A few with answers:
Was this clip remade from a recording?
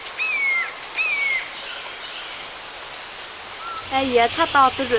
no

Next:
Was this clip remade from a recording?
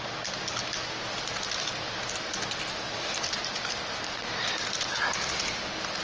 no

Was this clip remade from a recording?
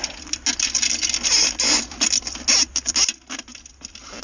no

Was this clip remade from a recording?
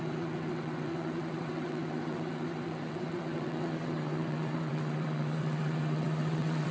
yes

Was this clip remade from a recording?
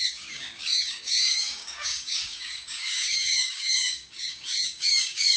yes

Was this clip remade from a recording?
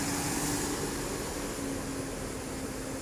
no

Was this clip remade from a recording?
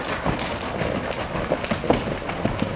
no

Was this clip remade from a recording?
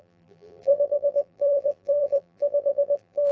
yes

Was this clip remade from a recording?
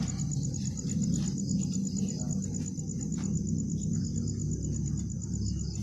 no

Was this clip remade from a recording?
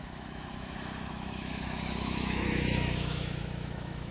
yes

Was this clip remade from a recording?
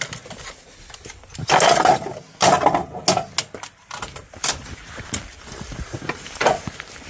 no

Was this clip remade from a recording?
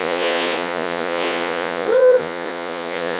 yes